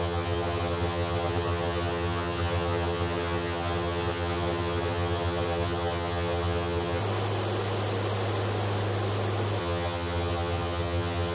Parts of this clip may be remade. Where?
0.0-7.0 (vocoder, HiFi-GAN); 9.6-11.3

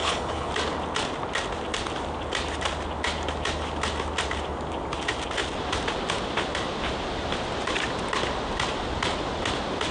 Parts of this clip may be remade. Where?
0.0-0.5 (codec, HILCodec)